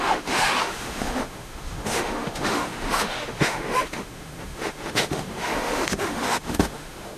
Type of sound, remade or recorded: remade